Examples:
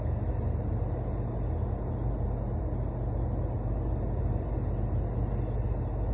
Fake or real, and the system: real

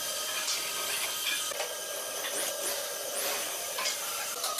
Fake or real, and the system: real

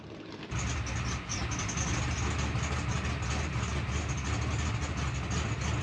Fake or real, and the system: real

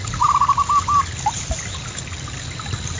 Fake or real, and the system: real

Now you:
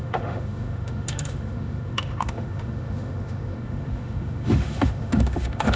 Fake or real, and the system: fake, autoencoder, DAC-VAE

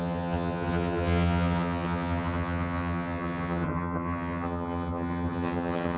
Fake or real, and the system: fake, vocoder, HiFi-GAN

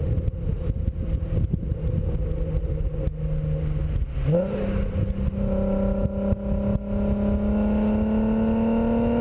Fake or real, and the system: real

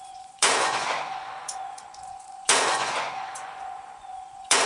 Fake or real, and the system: fake, vocoder, Vocos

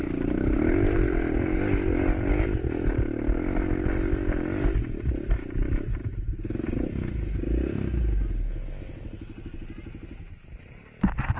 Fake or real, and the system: real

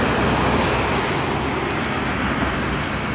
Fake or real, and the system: real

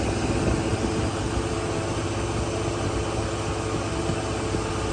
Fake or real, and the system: real